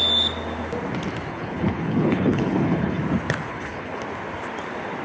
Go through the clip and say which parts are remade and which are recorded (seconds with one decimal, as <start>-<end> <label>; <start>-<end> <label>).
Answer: 0.0-1.3 recorded; 1.3-3.0 remade; 3.0-3.5 recorded; 3.5-4.0 remade; 4.0-5.0 recorded